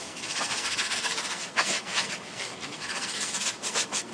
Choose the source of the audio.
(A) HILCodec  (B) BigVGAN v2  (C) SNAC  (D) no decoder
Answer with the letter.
C